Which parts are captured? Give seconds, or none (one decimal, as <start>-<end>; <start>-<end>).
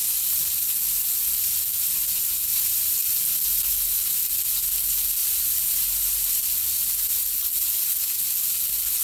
0.0-2.5; 3.7-5.2; 6.4-9.0